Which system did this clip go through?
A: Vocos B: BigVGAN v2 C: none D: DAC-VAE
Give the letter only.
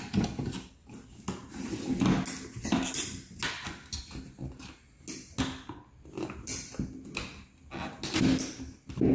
C